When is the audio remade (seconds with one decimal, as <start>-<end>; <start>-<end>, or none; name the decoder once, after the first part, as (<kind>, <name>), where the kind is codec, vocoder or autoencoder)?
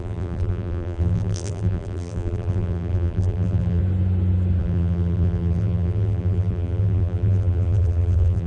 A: 0.0-3.8 (vocoder, BigVGAN v2); 4.6-8.5